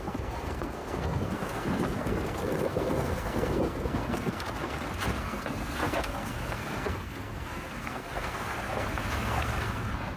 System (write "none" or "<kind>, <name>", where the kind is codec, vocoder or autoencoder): codec, SNAC